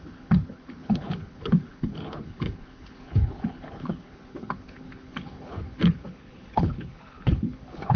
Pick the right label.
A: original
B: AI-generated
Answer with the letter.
B